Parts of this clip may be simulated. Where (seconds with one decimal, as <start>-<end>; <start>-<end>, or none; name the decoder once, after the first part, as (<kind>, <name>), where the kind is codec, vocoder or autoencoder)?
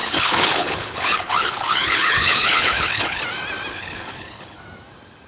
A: 0.0-3.2 (codec, HILCodec); 3.7-4.6